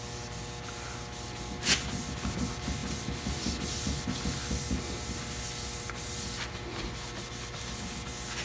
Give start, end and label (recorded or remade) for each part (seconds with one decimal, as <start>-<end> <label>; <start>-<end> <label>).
0.0-8.4 recorded